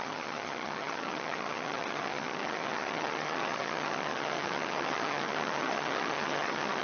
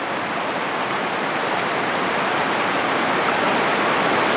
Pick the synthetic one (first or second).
first